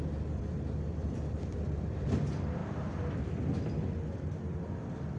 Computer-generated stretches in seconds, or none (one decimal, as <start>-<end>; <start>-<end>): 0.0-5.2